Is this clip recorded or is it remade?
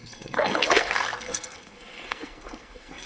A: remade